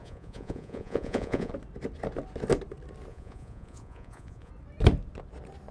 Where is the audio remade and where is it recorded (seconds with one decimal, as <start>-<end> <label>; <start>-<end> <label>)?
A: 0.0-1.5 remade; 1.5-3.1 recorded; 3.1-4.5 remade; 4.5-5.7 recorded